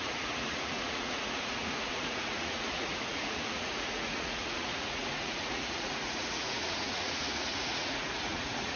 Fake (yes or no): yes